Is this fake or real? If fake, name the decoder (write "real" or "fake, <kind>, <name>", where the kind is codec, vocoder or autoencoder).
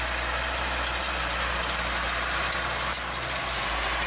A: real